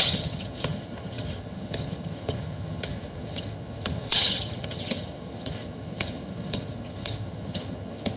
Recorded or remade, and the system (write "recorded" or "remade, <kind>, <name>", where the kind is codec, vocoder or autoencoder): remade, vocoder, HiFi-GAN